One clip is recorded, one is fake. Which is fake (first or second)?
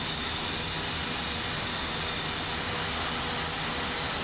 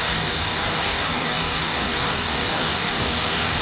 second